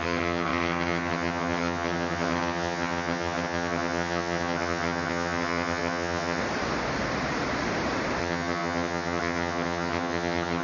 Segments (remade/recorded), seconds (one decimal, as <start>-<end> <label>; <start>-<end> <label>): 0.0-6.4 remade; 6.4-8.2 recorded; 8.2-10.6 remade